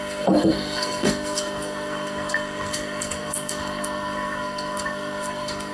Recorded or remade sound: remade